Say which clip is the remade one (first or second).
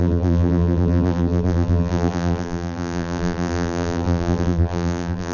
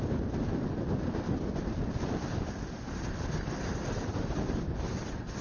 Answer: first